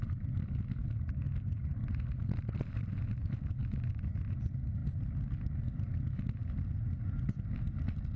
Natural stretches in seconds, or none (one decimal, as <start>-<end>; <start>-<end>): 0.0-8.2